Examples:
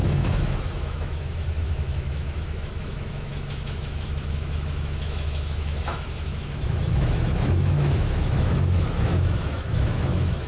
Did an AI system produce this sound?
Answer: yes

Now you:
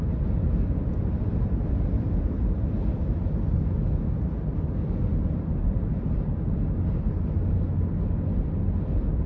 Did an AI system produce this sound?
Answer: no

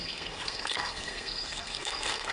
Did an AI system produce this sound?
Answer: yes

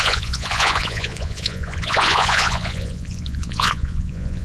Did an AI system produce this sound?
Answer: yes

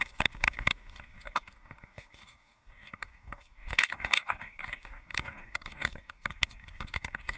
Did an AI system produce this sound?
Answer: yes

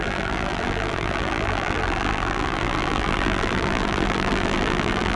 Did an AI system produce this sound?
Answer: yes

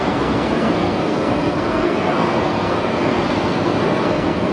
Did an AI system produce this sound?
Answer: yes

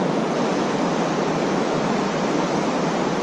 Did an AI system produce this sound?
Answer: yes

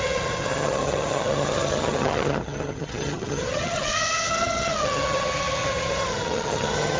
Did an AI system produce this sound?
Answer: yes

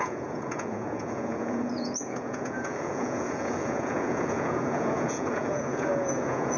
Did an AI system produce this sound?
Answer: yes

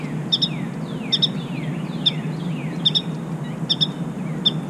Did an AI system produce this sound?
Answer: no